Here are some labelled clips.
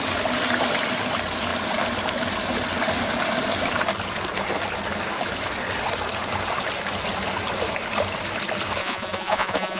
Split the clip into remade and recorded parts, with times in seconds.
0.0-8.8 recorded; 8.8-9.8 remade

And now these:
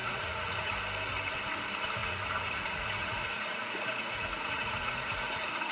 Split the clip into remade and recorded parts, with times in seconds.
0.0-0.7 remade; 0.7-2.0 recorded; 2.0-5.7 remade

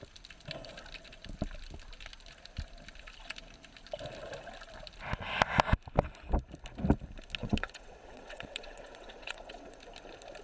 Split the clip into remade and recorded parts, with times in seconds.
0.0-7.4 recorded; 7.4-9.8 remade; 9.8-10.4 recorded

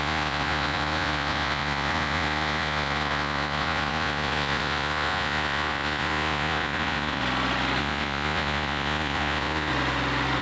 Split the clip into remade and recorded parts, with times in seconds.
0.0-7.2 remade; 7.2-7.8 recorded; 7.8-9.7 remade; 9.7-10.4 recorded

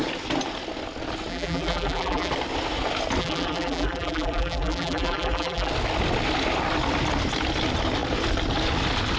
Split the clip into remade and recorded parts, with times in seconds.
0.0-1.3 recorded; 1.3-2.3 remade; 2.3-3.2 recorded; 3.2-5.7 remade; 5.7-9.2 recorded

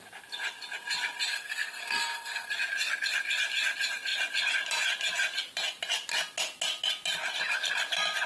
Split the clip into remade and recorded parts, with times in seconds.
0.0-1.3 recorded; 1.3-2.5 remade; 2.5-8.3 recorded

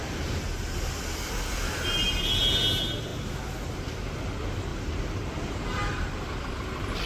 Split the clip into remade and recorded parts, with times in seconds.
0.0-4.7 recorded; 4.7-6.0 remade; 6.0-7.1 recorded